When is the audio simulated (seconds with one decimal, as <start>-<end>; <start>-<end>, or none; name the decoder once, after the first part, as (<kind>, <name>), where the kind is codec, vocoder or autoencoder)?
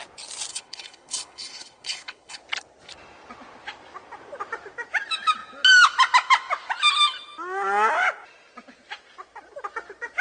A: 0.5-2.4 (codec, HILCodec)